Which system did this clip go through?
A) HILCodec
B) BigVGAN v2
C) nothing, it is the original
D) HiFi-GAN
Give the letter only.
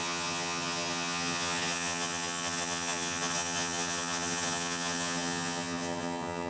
D